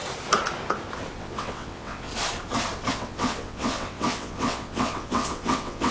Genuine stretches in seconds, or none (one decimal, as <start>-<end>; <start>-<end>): 0.0-1.2; 2.1-2.9